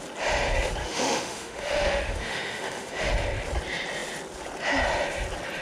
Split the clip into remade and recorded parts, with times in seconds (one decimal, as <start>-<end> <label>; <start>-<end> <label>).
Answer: 0.0-0.8 recorded; 0.8-3.1 remade; 3.1-5.6 recorded